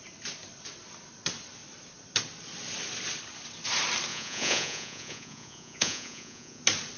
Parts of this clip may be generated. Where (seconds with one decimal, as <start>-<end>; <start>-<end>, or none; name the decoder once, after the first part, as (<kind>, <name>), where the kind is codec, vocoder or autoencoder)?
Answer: 4.1-6.6 (vocoder, Vocos)